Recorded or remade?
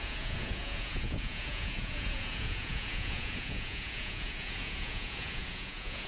remade